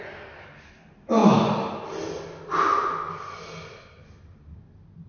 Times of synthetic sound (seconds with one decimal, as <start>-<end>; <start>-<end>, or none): none